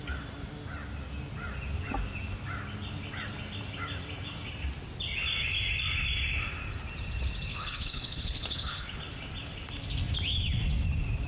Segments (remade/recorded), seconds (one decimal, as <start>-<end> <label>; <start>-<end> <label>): 0.0-7.5 recorded; 7.5-9.0 remade; 9.0-11.3 recorded